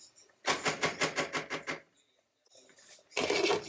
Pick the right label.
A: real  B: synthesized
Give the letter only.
A